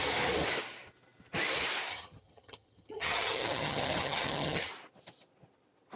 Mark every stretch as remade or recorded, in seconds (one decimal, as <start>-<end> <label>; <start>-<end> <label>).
0.0-1.9 recorded; 1.9-4.7 remade; 4.7-6.0 recorded